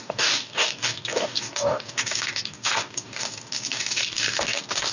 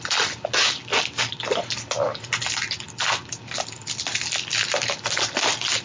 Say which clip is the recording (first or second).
second